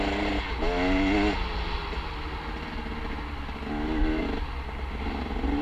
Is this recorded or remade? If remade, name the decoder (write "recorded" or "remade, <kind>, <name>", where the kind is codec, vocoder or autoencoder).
recorded